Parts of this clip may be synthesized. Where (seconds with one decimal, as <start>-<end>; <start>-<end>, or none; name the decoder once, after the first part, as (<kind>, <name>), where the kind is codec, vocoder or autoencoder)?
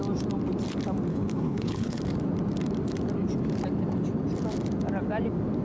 1.1-2.0 (codec, HILCodec)